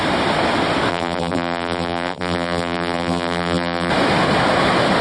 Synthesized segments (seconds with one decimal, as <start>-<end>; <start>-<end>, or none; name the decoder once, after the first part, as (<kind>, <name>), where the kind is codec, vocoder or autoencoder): 0.9-3.9 (vocoder, BigVGAN v2)